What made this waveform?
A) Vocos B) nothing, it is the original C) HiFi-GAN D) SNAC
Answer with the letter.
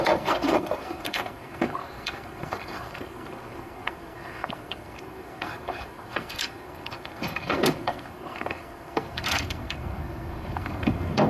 D